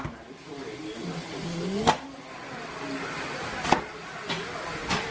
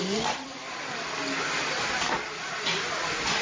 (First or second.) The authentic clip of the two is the first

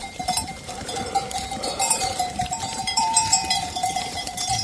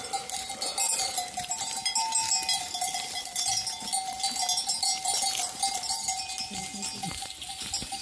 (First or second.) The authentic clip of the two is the second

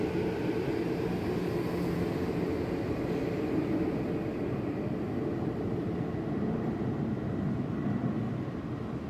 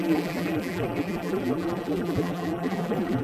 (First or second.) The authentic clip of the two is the first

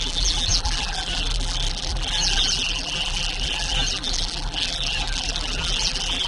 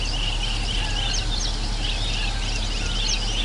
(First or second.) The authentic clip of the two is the second